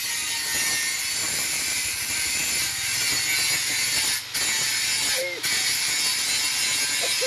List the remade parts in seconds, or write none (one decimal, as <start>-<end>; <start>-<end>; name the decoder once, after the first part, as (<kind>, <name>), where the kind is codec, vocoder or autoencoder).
1.2-3.0 (vocoder, BigVGAN v2)